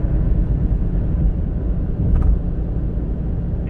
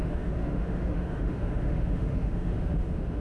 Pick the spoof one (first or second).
second